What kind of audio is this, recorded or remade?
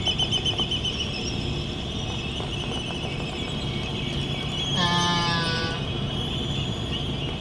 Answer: recorded